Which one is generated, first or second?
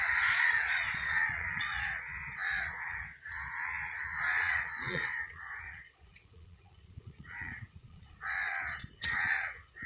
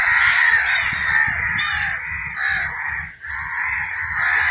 first